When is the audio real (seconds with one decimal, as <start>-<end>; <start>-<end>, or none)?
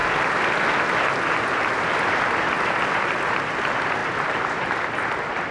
0.0-5.5